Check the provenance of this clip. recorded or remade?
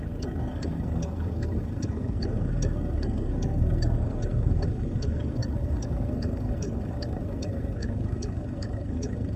remade